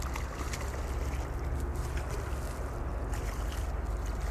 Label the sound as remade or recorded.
recorded